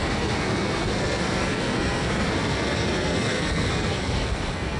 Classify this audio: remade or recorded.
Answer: remade